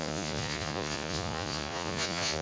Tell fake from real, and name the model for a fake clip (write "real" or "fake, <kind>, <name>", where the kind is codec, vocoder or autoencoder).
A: fake, vocoder, Vocos